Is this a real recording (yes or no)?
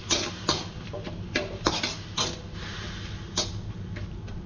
yes